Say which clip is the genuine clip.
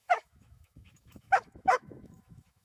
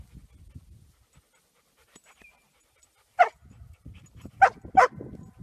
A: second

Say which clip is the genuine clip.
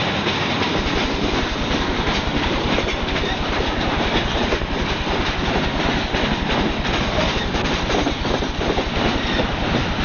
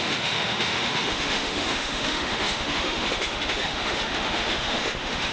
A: first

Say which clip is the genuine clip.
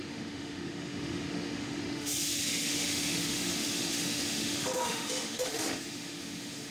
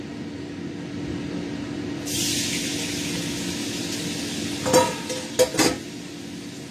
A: second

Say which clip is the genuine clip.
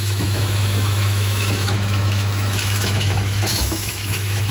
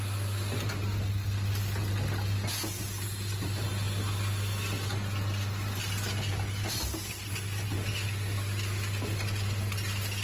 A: second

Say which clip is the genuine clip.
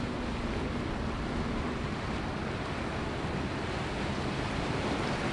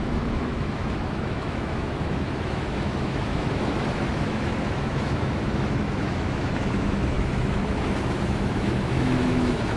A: first